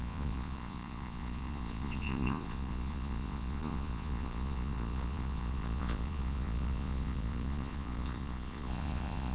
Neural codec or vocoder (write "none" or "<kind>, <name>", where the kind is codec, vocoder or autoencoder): vocoder, Vocos